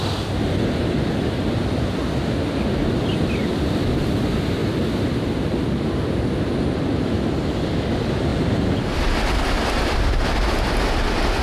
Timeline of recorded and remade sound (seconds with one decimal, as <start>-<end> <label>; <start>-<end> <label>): 0.0-11.4 recorded